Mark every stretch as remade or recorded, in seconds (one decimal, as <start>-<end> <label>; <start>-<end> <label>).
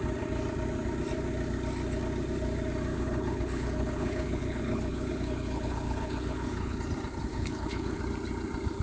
0.0-2.9 recorded; 2.9-6.8 remade; 6.8-7.3 recorded; 7.3-8.0 remade; 8.0-8.8 recorded